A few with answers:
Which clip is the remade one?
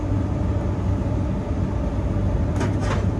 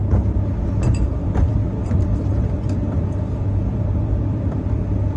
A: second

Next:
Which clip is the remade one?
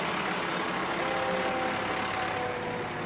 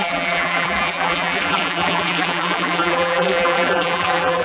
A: second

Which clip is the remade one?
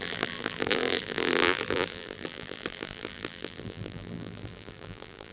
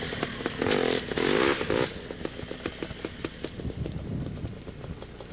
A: first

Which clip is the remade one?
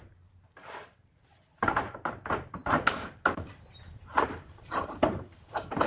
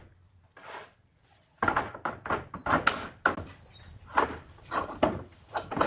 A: first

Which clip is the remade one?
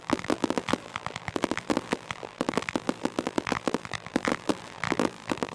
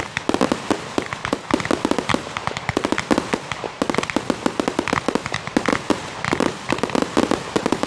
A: first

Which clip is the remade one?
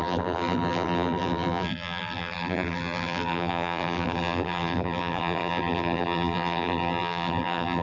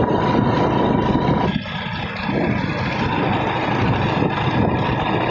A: first